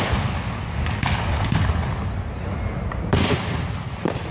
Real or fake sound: real